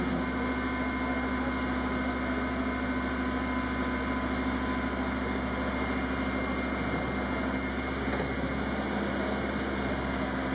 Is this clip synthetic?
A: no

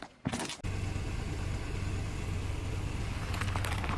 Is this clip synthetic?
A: no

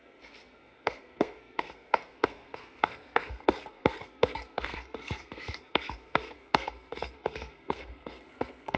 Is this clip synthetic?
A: yes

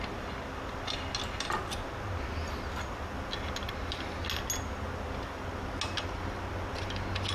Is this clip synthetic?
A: no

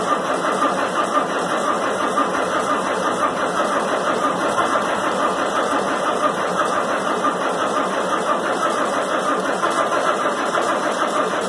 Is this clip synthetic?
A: no